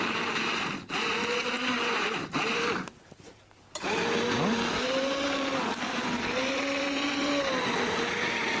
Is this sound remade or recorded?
remade